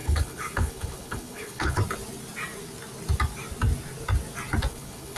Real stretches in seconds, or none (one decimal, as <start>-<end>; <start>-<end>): 1.8-4.7